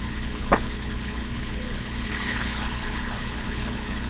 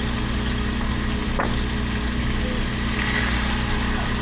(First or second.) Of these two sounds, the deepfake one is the first